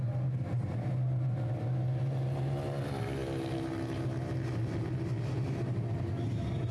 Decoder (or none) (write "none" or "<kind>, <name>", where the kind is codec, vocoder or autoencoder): none